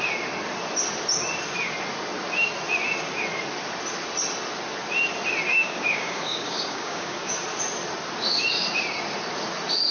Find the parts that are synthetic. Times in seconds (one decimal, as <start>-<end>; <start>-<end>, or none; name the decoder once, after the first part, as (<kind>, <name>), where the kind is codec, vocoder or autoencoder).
5.5-7.3 (codec, DAC)